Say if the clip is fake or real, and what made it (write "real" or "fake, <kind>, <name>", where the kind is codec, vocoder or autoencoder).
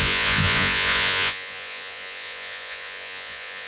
fake, vocoder, Vocos